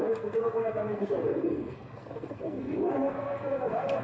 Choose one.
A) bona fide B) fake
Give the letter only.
B